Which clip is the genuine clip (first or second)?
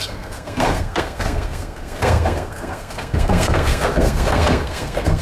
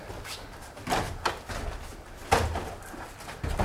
second